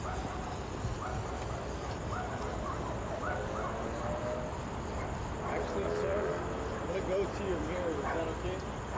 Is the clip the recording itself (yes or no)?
yes